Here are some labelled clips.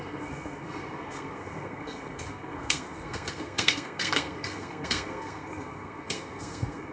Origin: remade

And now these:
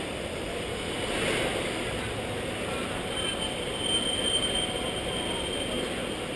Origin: recorded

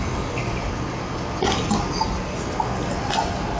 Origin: recorded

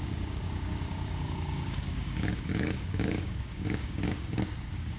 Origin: remade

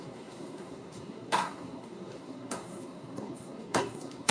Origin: remade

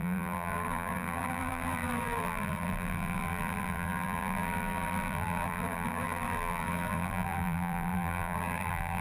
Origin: remade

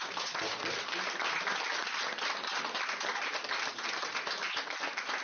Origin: recorded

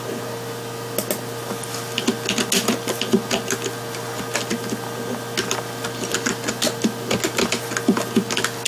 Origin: recorded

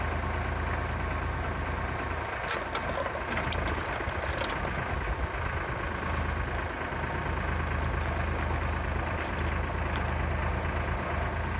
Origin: recorded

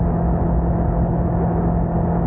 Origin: recorded